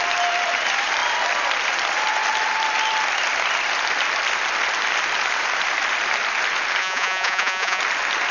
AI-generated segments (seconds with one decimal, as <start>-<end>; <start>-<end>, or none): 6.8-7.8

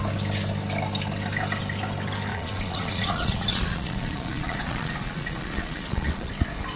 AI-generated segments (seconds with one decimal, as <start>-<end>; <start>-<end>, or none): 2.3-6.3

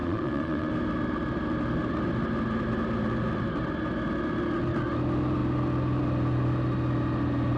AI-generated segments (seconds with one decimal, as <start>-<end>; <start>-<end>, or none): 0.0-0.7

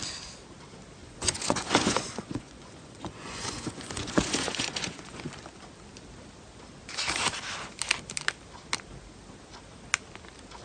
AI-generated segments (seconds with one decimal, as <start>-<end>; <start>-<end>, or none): 1.0-5.3

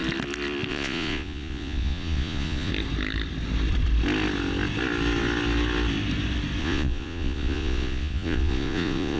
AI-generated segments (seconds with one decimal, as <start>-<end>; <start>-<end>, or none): 0.7-2.7; 6.6-9.2

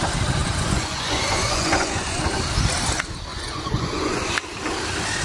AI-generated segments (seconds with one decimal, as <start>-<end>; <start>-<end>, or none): 0.4-2.2; 3.3-4.2